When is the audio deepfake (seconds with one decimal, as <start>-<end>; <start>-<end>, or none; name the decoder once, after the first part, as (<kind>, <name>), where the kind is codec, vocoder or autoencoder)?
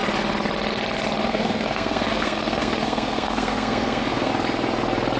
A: 1.2-4.3 (codec, SNAC)